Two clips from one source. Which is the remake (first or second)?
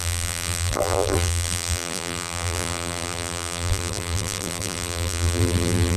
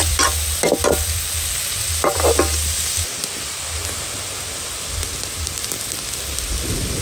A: first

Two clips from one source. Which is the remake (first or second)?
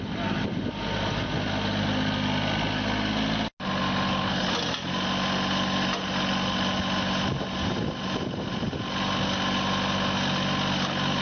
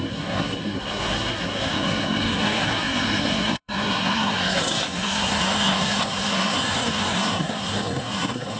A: second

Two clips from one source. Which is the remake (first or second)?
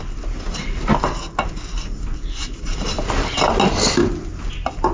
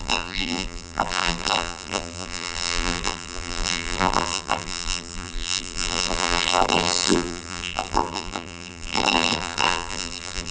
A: second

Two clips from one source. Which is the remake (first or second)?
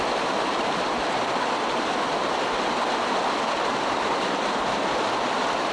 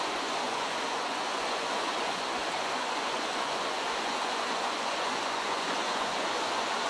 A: second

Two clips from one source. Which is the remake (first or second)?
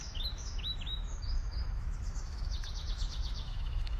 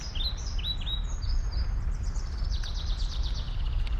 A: first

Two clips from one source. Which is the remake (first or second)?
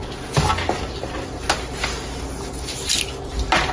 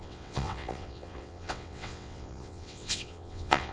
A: second